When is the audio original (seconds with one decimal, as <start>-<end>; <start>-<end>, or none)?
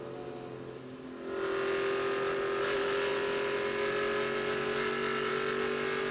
0.0-6.1